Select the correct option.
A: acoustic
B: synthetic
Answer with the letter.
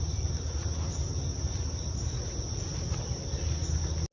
A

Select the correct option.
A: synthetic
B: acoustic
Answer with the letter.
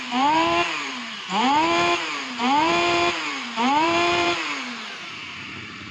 A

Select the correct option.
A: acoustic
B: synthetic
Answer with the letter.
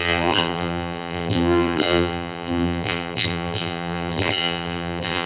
B